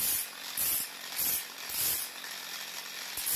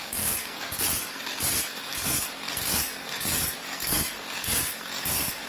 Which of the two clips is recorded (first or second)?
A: first